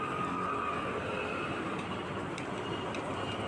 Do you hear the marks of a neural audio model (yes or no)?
no